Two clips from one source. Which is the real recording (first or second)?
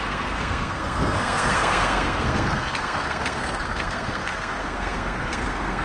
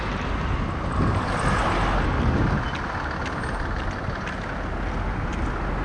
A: second